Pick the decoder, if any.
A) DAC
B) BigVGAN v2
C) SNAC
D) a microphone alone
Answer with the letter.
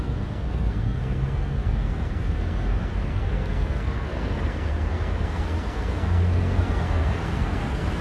C